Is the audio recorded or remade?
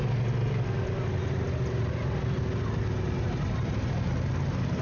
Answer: recorded